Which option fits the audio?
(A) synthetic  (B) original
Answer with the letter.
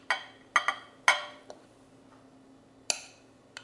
B